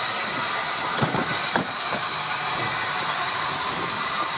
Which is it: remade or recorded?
remade